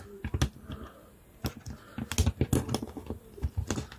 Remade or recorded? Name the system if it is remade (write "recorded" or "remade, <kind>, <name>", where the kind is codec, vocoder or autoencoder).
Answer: recorded